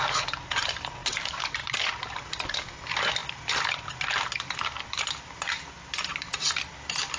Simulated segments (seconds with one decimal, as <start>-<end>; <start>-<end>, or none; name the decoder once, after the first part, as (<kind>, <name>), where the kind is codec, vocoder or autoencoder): 0.0-7.2 (vocoder, BigVGAN v2)